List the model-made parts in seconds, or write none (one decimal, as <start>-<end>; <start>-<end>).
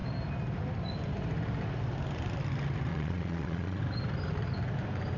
2.9-3.8